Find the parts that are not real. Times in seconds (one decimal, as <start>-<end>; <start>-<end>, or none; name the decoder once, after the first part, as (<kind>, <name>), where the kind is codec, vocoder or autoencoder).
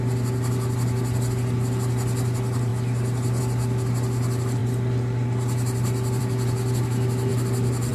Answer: none